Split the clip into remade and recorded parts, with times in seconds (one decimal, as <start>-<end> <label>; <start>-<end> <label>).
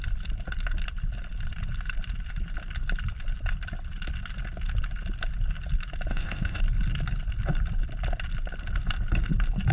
0.0-6.1 recorded; 6.1-6.6 remade; 6.6-9.7 recorded